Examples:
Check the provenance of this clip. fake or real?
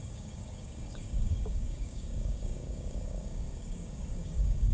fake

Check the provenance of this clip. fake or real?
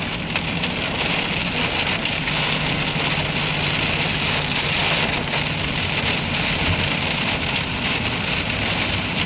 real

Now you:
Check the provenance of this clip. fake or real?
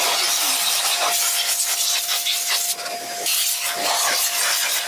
real